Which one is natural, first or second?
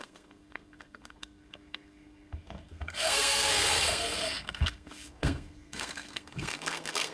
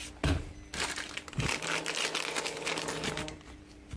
second